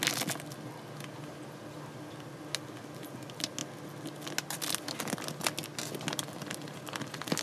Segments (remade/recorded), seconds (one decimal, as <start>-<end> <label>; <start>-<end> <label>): 0.0-7.4 recorded